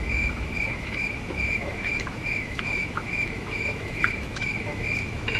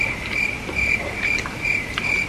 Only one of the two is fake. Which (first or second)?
first